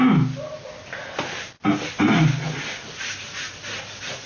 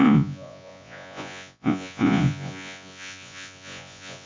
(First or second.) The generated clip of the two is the second